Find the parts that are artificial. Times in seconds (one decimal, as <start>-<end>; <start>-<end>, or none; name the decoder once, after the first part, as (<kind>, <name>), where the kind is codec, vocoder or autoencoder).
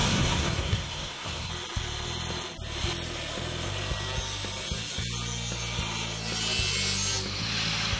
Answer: 0.0-1.5 (codec, SNAC)